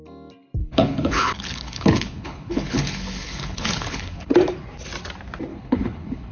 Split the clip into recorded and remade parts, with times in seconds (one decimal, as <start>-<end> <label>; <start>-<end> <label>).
0.0-0.6 recorded; 0.6-4.3 remade; 4.3-5.5 recorded; 5.5-6.3 remade